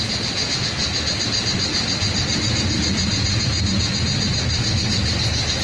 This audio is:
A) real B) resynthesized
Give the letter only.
A